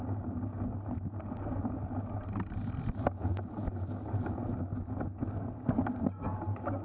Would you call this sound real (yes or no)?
yes